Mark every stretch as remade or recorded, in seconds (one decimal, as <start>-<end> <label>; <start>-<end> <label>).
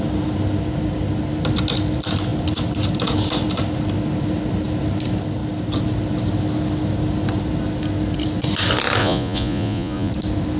0.0-9.0 recorded; 9.0-10.1 remade; 10.1-10.6 recorded